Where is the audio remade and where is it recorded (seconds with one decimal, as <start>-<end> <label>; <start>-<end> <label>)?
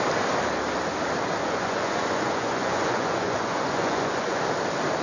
0.0-1.4 recorded; 1.4-4.4 remade; 4.4-5.0 recorded